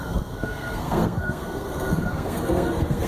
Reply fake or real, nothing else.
fake